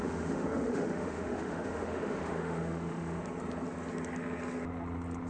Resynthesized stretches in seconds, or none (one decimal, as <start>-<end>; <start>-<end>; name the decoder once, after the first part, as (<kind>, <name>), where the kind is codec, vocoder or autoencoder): 0.0-3.2 (autoencoder, DAC-VAE)